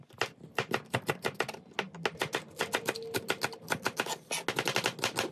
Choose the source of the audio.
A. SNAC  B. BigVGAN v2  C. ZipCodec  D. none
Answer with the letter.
D